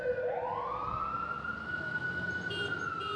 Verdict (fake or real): real